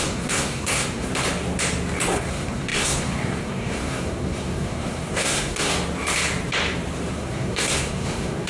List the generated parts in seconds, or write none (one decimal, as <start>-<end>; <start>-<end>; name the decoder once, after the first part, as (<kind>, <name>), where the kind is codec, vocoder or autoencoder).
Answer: 0.0-1.1 (codec, SNAC); 2.1-5.7; 7.1-8.5